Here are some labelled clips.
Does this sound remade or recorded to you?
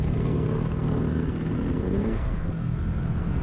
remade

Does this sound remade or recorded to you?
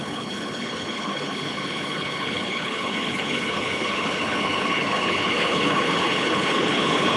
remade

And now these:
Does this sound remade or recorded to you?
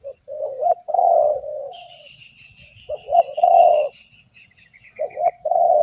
remade